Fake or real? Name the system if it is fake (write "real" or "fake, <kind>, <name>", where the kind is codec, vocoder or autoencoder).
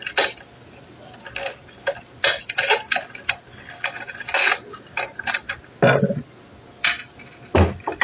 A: real